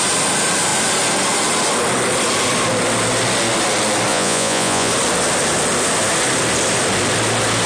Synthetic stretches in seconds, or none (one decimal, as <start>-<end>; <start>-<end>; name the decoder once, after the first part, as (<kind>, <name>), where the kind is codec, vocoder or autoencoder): 4.1-4.9 (vocoder, Vocos)